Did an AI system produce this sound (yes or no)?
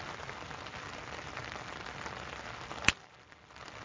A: no